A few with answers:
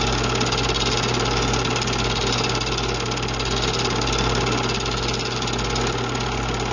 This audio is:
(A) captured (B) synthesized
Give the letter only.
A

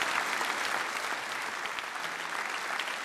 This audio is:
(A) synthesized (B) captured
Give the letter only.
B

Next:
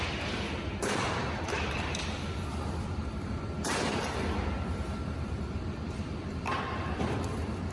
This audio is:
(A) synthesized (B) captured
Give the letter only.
A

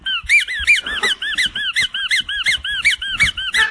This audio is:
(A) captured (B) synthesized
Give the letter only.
A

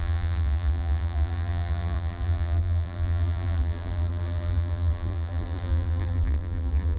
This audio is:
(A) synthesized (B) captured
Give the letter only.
A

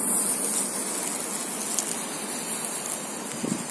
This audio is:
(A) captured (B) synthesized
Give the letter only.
A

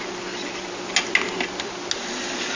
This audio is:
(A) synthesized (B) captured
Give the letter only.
B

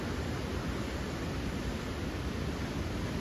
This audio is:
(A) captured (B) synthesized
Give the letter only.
A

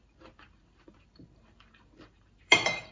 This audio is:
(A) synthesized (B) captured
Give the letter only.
A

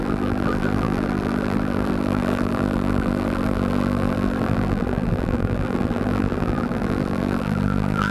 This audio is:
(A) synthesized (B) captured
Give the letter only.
A